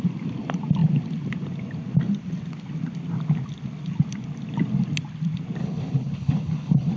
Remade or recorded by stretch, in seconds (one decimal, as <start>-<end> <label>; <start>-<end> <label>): 0.0-5.6 recorded; 5.6-7.0 remade